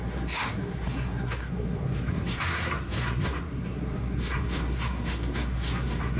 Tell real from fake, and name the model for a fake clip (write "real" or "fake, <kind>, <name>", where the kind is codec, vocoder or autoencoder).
fake, codec, SNAC